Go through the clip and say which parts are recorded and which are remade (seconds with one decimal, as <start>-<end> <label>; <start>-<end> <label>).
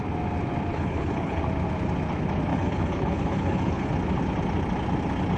0.0-0.7 recorded; 0.7-1.4 remade; 1.4-2.5 recorded; 2.5-3.9 remade; 3.9-5.4 recorded